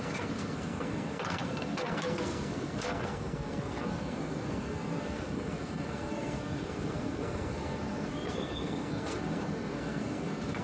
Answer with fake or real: fake